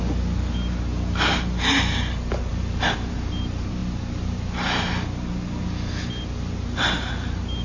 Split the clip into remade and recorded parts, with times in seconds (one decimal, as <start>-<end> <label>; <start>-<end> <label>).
0.0-7.6 recorded